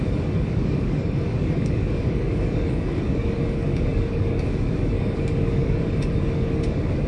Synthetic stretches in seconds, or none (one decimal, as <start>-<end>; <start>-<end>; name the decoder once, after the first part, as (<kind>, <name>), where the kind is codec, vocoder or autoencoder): 0.0-7.1 (codec, DAC)